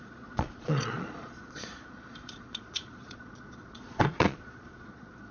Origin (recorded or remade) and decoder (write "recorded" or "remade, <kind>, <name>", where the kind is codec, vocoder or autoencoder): remade, vocoder, Vocos